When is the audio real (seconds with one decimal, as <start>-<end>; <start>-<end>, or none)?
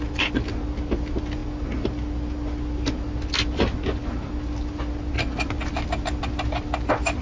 0.0-7.2